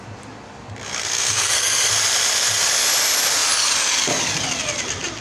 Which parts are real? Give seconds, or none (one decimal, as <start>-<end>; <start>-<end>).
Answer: 0.0-1.0; 1.9-5.2

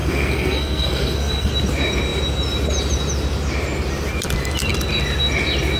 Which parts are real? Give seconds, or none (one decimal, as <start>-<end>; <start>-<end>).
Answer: 1.5-5.8

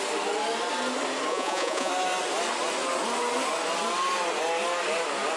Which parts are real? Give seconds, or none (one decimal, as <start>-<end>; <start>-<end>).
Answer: 0.0-1.3; 1.9-5.4

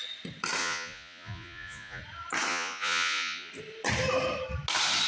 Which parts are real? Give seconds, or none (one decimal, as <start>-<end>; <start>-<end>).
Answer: 0.0-0.6; 2.0-2.5; 3.5-5.1

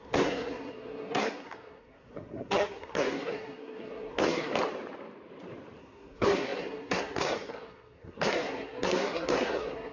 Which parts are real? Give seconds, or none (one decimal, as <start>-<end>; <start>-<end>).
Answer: 4.5-5.8